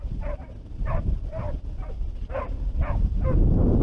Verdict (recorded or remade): recorded